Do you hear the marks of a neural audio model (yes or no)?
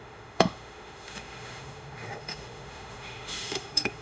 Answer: yes